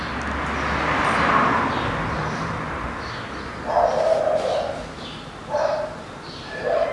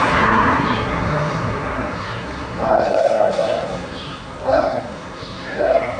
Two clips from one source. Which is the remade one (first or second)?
second